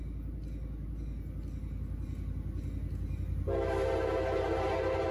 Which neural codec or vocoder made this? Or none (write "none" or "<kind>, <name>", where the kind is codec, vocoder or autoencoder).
none